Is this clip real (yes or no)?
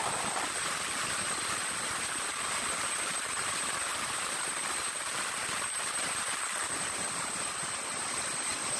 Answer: yes